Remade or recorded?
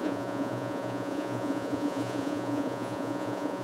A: remade